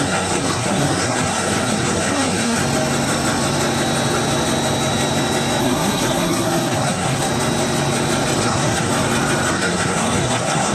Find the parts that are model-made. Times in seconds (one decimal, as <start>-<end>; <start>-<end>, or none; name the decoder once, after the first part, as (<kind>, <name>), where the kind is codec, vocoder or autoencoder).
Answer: 0.0-2.6 (codec, SNAC); 5.6-7.3; 8.4-8.9; 9.5-10.7